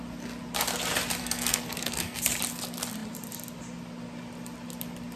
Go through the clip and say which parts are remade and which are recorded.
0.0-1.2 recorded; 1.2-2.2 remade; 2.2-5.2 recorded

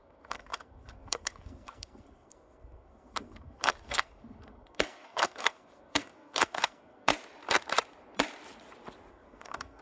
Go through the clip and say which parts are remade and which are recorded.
0.0-7.1 remade; 7.1-9.1 recorded; 9.1-9.8 remade

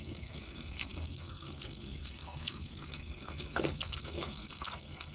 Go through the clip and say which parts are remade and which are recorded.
0.0-5.1 remade

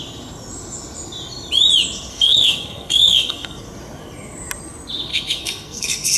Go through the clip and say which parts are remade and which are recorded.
0.0-2.1 recorded; 2.1-3.6 remade; 3.6-5.1 recorded; 5.1-6.2 remade

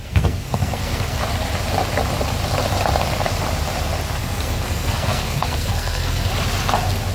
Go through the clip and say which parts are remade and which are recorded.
0.0-1.2 remade; 1.2-4.2 recorded; 4.2-6.3 remade; 6.3-7.1 recorded

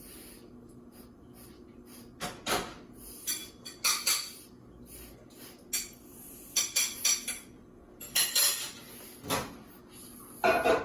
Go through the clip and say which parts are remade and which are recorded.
0.0-10.8 recorded

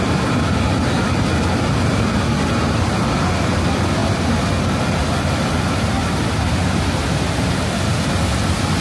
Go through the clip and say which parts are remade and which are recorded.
0.0-8.8 recorded

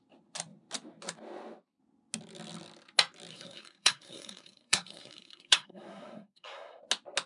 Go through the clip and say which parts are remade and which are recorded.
0.0-3.3 recorded; 3.3-6.8 remade; 6.8-7.3 recorded